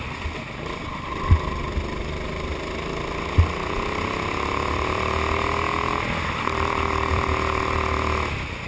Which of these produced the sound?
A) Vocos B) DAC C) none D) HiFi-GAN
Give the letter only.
C